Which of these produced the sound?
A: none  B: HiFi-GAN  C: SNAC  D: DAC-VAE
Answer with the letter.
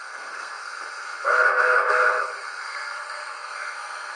C